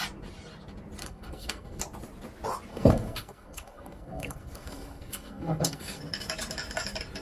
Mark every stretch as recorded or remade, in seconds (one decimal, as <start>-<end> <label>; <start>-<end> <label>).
0.0-1.0 recorded; 1.0-1.8 remade; 1.8-2.7 recorded; 2.7-6.0 remade; 6.0-7.2 recorded